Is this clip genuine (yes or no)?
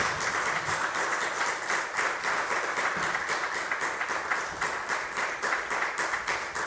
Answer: yes